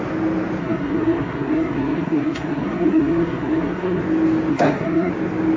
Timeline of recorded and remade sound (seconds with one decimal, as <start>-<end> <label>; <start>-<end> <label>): 0.0-0.6 recorded; 0.6-4.0 remade; 4.0-4.5 recorded; 4.5-5.1 remade; 5.1-5.6 recorded